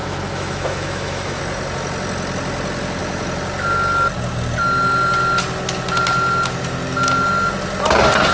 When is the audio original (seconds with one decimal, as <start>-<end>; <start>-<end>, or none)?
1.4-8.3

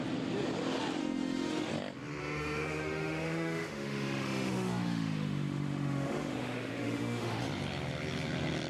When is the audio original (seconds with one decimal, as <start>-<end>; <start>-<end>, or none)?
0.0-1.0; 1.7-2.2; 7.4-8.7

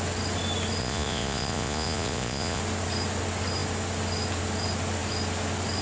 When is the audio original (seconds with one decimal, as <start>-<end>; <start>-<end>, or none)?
0.0-0.8; 2.6-5.8